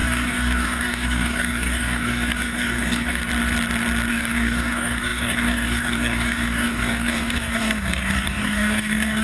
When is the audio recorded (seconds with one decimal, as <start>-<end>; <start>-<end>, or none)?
3.2-4.1